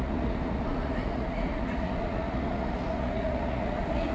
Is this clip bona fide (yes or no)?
no